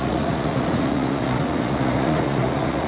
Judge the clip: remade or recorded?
remade